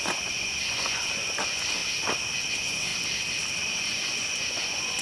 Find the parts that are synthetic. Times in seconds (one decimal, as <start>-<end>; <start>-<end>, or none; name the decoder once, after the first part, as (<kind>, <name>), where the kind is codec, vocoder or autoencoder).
0.0-1.8 (vocoder, Vocos); 2.5-2.9; 3.6-5.0